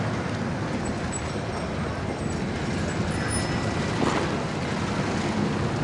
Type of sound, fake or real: real